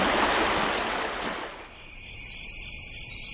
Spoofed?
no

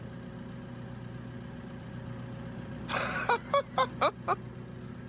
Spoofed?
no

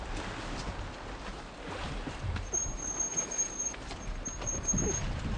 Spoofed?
no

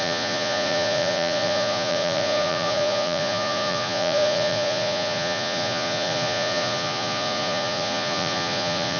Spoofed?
yes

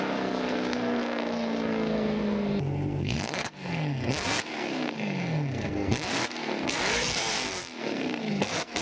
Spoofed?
yes